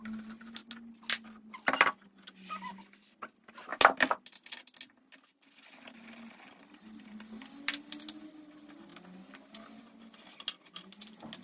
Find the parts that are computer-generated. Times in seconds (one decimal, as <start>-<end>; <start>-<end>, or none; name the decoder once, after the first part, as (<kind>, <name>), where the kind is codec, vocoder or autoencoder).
none